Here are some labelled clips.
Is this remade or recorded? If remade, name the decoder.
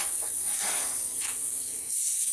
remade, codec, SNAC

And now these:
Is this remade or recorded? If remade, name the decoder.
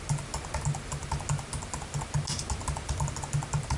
recorded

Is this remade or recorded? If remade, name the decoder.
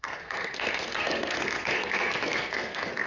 remade, codec, SNAC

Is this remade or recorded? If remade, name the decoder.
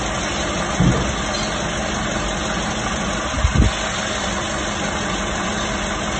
recorded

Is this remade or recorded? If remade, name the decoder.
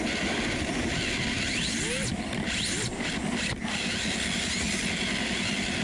recorded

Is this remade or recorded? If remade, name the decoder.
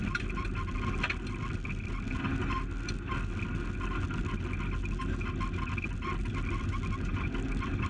recorded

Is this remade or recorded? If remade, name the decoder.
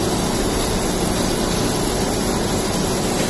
recorded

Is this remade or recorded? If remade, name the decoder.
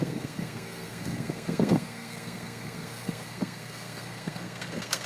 remade, codec, SNAC